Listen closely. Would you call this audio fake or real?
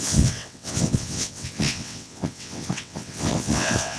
fake